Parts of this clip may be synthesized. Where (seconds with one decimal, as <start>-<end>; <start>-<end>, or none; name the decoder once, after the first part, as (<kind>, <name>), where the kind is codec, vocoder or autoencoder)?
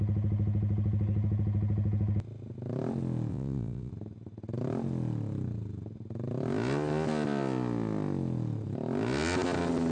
3.3-3.9 (vocoder, WaveNeXt)